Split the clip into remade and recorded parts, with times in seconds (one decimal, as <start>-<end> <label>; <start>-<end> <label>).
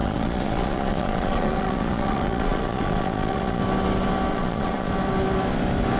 0.0-3.6 remade; 3.6-4.3 recorded; 4.3-4.9 remade; 4.9-6.0 recorded